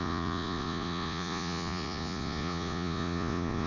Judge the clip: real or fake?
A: fake